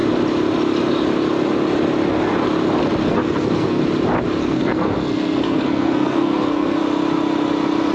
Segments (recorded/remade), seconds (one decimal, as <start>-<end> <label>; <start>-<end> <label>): 0.0-3.0 recorded; 3.0-3.8 remade; 3.8-4.4 recorded; 4.4-6.8 remade; 6.8-7.9 recorded